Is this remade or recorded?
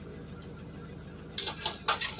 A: recorded